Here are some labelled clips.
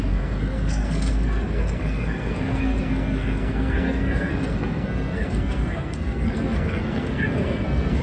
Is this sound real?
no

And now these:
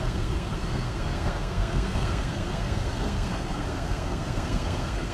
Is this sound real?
no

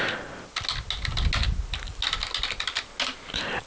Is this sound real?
yes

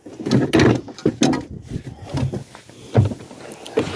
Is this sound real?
yes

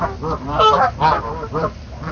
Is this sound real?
yes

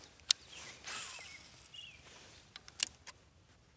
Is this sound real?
yes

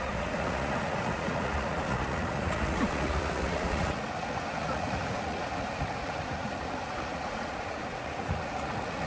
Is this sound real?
no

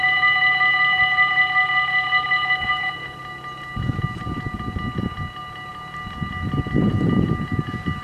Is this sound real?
yes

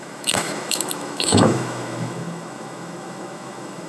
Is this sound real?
no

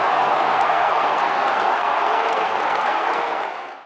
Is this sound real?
no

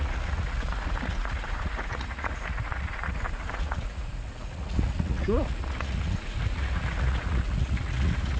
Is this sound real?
no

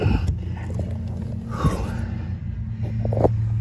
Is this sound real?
yes